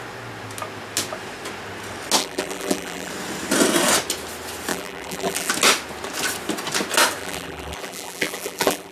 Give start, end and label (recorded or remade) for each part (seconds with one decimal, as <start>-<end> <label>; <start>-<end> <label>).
0.0-2.2 recorded; 2.2-3.1 remade; 3.1-4.7 recorded; 4.7-5.5 remade; 5.5-7.2 recorded; 7.2-8.9 remade